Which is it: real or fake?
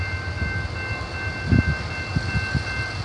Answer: real